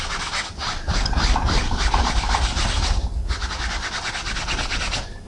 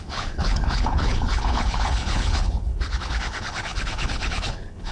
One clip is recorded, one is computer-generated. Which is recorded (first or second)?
first